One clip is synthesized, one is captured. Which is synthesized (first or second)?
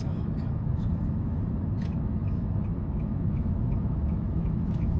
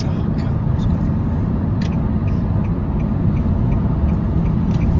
first